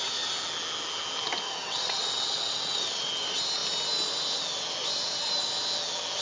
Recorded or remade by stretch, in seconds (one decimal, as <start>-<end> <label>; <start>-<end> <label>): 0.0-1.6 recorded; 1.6-3.1 remade; 3.1-6.2 recorded